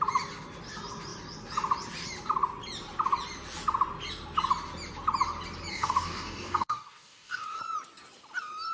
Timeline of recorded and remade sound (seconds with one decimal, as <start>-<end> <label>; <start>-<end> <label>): 0.0-5.7 recorded; 5.7-7.6 remade; 7.6-8.7 recorded